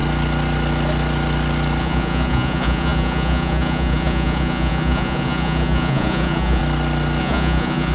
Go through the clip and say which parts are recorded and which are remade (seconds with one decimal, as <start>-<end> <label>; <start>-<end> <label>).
0.0-1.8 recorded; 1.8-6.6 remade; 6.6-7.2 recorded; 7.2-7.9 remade